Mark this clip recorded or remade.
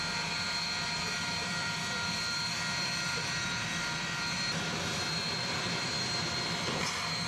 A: remade